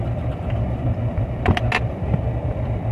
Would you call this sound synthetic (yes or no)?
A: no